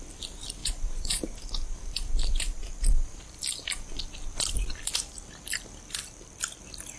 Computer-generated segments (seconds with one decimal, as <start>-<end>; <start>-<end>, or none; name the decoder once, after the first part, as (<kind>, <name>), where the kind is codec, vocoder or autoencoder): 0.6-4.0 (vocoder, BigVGAN v2)

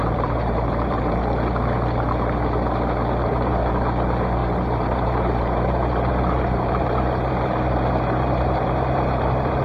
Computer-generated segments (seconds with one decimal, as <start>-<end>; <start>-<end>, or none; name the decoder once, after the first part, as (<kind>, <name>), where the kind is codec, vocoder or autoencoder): 0.0-1.2 (vocoder, BigVGAN v2); 3.2-3.7; 4.4-9.6

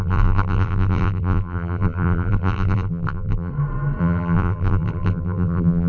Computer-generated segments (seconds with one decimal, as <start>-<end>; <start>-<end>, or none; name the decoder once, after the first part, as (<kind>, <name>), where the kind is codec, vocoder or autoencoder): 0.0-3.5 (vocoder, BigVGAN v2); 4.0-5.9